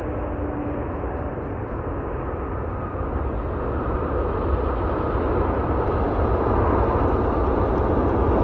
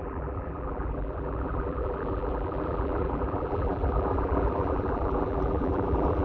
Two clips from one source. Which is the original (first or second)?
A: first